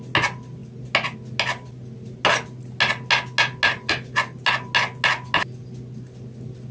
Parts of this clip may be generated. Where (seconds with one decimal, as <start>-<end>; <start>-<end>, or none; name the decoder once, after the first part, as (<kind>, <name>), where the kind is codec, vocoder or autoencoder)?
none